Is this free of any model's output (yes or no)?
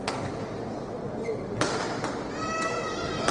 yes